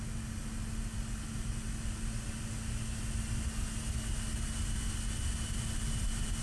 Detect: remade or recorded recorded